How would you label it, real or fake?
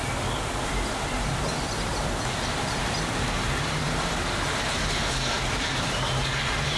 fake